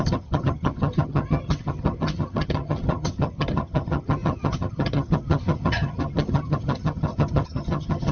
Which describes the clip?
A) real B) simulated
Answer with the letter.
B